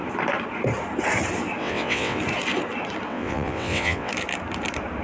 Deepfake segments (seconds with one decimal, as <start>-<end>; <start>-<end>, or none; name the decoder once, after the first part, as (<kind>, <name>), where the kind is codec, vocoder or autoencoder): 1.6-2.2 (vocoder, WaveNeXt); 3.1-4.1